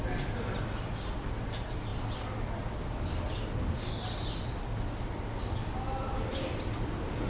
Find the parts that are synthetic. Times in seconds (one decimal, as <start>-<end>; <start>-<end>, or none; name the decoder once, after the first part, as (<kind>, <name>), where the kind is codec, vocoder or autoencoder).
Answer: none